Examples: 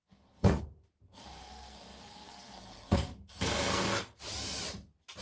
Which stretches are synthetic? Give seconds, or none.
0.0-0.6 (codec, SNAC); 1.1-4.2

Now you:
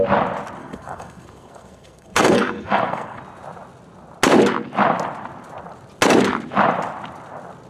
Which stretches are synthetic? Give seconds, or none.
0.6-3.2 (codec, SNAC)